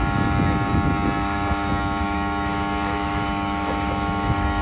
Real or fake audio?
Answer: fake